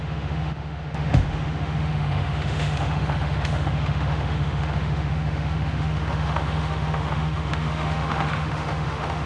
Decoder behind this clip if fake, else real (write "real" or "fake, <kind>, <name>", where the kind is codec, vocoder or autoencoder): fake, autoencoder, DAC-VAE